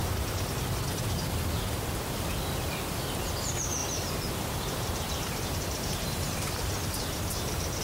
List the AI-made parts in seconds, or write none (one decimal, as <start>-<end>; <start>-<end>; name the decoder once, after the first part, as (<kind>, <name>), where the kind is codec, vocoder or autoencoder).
3.8-7.8 (vocoder, BigVGAN v2)